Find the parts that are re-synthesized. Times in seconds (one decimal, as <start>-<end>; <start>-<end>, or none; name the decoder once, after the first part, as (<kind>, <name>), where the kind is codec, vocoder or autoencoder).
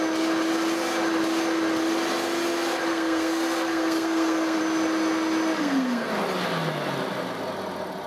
2.9-4.6 (codec, SNAC); 5.6-6.1